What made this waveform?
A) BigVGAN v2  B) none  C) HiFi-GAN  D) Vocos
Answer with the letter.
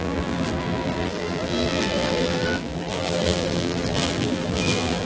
A